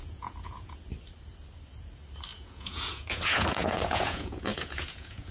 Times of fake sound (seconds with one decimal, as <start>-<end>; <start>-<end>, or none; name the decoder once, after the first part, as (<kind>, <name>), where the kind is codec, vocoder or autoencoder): 0.0-0.8 (vocoder, Vocos); 2.3-5.3